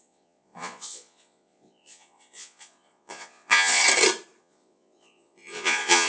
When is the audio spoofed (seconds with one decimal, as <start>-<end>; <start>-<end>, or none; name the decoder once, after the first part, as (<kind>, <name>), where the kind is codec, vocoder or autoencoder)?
0.0-3.8 (vocoder, Vocos); 4.4-6.1